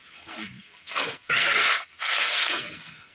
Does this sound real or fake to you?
fake